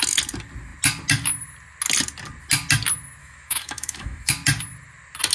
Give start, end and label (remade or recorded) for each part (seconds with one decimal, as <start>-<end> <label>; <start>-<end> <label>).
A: 0.0-3.2 recorded; 3.2-4.3 remade; 4.3-5.3 recorded

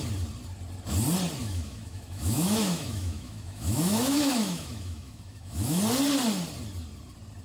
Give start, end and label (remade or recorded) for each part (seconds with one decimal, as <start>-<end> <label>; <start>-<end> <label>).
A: 0.0-1.4 recorded; 1.4-5.8 remade; 5.8-7.4 recorded

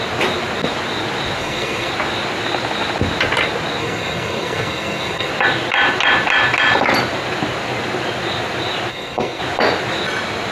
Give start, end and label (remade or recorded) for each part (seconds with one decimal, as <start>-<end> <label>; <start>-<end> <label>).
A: 0.0-1.4 recorded; 1.4-1.9 remade; 1.9-3.8 recorded; 3.8-5.3 remade; 5.3-8.9 recorded; 8.9-9.4 remade; 9.4-10.5 recorded

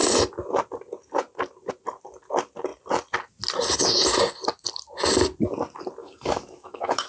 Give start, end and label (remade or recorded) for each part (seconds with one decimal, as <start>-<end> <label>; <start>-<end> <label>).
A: 0.0-6.0 recorded; 6.0-7.1 remade

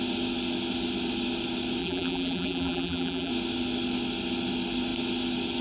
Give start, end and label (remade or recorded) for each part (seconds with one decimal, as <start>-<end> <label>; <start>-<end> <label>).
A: 0.0-1.8 recorded; 1.8-3.3 remade; 3.3-5.6 recorded

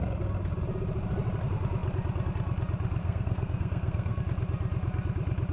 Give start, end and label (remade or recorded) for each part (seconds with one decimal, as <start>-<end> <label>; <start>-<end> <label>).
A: 0.0-3.0 recorded; 3.0-4.2 remade; 4.2-5.5 recorded

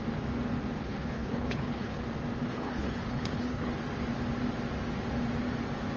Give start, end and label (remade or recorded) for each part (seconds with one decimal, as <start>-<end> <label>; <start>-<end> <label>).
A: 0.0-0.8 recorded; 0.8-2.0 remade; 2.0-2.5 recorded; 2.5-3.7 remade; 3.7-6.0 recorded